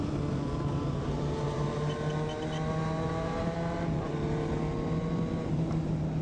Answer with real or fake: real